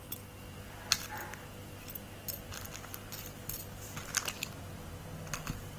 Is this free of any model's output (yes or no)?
yes